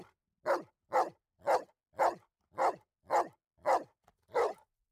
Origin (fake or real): real